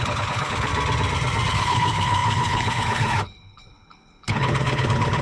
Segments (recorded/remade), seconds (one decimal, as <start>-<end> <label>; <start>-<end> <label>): 0.0-0.7 remade; 0.7-1.5 recorded; 1.5-5.2 remade